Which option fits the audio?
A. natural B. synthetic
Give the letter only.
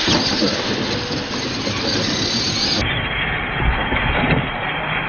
A